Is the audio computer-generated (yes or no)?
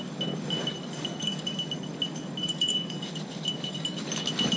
yes